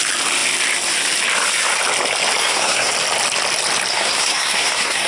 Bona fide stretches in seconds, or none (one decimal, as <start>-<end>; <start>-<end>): 0.0-2.4; 2.9-3.9